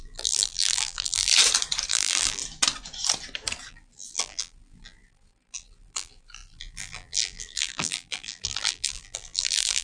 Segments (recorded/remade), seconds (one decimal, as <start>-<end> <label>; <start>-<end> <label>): 0.0-1.3 remade; 1.3-1.9 recorded; 1.9-2.4 remade; 2.4-3.7 recorded; 3.7-9.8 remade